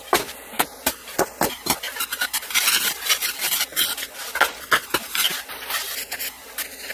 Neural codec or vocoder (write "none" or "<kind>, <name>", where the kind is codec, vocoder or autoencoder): none